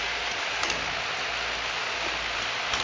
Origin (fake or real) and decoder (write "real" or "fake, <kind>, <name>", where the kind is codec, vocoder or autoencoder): real